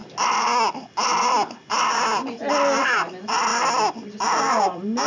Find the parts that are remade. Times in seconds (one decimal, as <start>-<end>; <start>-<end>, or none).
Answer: 3.5-4.5